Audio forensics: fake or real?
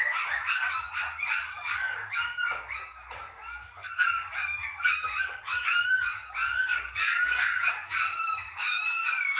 fake